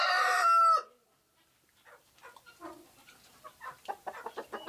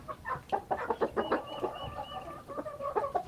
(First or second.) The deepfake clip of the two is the second